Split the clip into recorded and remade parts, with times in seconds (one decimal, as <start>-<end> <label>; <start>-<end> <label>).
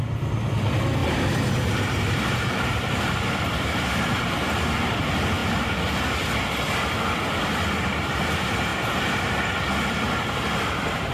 0.0-1.0 recorded; 1.0-4.3 remade; 4.3-11.1 recorded